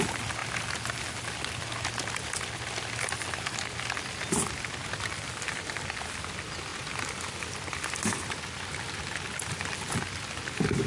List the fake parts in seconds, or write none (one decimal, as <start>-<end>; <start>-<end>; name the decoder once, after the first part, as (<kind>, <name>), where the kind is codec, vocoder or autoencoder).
none